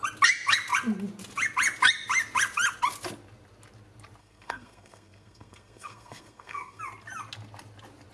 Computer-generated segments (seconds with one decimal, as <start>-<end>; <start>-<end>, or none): 4.2-6.8